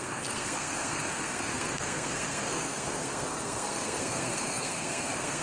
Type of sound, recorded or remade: remade